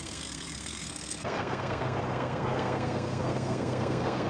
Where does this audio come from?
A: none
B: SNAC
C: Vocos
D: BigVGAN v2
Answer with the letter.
B